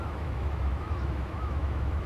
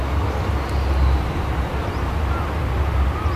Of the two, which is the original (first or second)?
second